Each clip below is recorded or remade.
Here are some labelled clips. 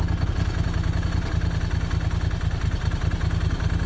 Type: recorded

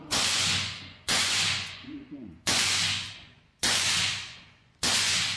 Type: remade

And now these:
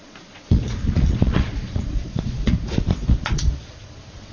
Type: remade